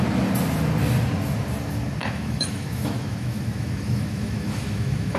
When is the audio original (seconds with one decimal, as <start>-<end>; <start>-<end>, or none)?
0.0-2.0